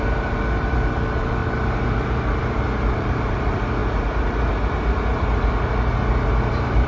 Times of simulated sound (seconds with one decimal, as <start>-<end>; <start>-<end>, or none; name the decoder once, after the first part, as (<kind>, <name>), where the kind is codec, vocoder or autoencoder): 0.0-3.8 (vocoder, BigVGAN v2); 6.3-6.9